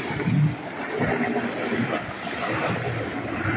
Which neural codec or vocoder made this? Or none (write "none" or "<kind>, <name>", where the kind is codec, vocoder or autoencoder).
none